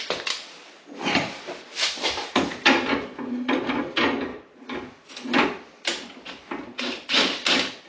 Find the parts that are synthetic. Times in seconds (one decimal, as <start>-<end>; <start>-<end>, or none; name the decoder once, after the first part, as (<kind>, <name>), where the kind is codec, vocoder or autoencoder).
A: 1.2-3.8 (vocoder, BigVGAN v2); 4.3-5.1